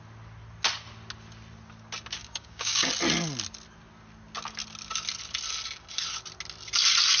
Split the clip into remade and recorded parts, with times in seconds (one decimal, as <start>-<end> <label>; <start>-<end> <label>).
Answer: 0.0-2.2 recorded; 2.2-2.9 remade; 2.9-7.2 recorded